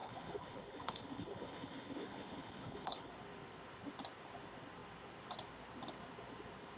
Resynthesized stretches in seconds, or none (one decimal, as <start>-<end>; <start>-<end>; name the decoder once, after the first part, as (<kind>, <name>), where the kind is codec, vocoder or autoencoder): 0.0-3.1 (codec, HILCodec)